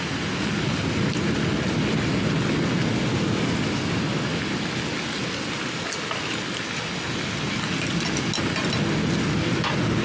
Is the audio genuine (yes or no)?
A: yes